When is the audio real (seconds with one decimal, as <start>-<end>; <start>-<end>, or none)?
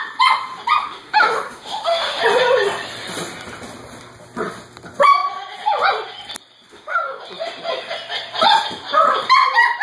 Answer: 0.0-0.8; 2.2-6.7; 7.2-9.8